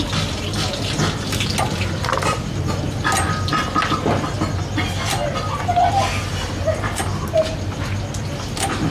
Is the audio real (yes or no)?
yes